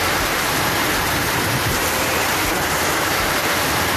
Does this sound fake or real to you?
fake